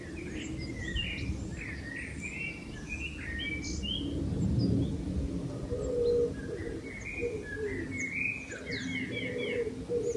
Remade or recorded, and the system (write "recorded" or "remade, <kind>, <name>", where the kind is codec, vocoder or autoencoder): recorded